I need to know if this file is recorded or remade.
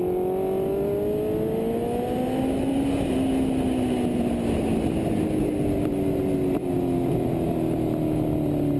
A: recorded